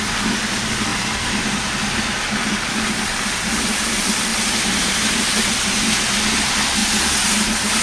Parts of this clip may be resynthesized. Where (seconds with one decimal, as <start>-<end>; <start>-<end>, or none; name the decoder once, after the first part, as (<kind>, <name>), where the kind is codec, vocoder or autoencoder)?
0.9-2.2 (vocoder, BigVGAN v2); 4.3-5.2; 6.8-7.8